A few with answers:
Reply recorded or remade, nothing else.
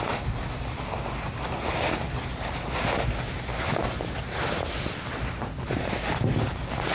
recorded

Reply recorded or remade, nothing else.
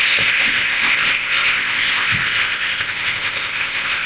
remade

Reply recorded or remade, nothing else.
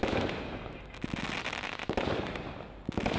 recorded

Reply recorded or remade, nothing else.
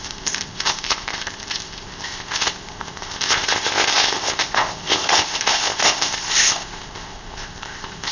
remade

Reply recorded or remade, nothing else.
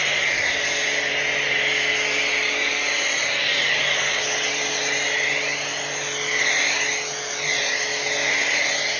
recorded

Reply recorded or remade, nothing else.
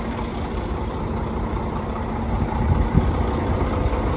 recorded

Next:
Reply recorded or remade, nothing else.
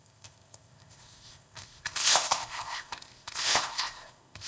remade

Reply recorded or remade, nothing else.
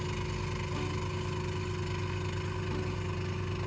recorded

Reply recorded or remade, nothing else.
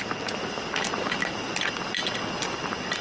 recorded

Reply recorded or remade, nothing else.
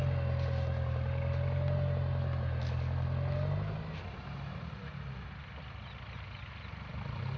recorded